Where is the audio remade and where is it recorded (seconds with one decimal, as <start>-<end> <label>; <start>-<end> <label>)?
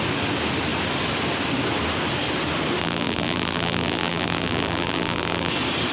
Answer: 0.0-2.8 recorded; 2.8-5.5 remade; 5.5-5.9 recorded